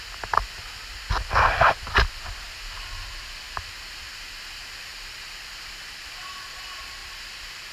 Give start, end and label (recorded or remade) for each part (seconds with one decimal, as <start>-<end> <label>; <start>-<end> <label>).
0.0-4.9 recorded; 4.9-6.0 remade; 6.0-7.0 recorded; 7.0-7.7 remade